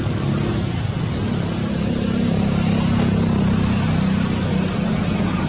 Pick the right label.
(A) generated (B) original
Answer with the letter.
B